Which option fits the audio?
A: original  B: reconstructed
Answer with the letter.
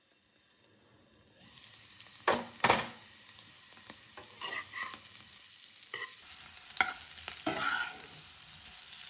A